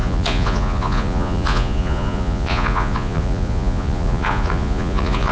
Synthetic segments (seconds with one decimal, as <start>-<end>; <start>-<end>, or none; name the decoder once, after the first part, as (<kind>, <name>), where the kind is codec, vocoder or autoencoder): 0.0-5.3 (vocoder, Vocos)